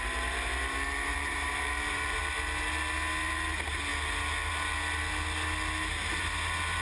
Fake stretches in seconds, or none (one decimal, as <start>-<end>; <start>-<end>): 1.1-2.2